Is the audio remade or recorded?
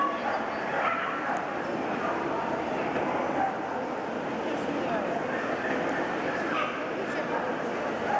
recorded